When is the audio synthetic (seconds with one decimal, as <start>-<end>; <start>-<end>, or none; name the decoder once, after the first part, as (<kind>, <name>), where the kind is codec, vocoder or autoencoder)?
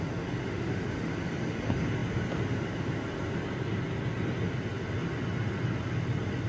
0.4-1.1 (autoencoder, DAC-VAE)